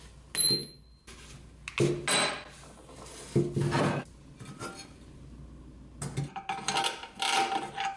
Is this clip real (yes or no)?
yes